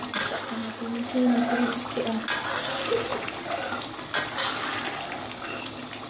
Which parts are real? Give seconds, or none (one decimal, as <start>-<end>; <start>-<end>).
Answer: 0.0-6.1